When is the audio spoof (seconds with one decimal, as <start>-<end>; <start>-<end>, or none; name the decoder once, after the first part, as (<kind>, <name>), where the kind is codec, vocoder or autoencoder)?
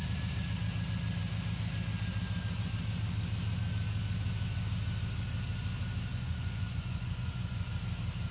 6.1-7.7 (vocoder, Vocos)